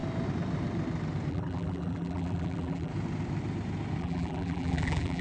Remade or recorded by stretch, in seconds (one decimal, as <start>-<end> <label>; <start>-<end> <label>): 0.0-1.3 recorded; 1.3-2.9 remade; 2.9-4.0 recorded; 4.0-5.2 remade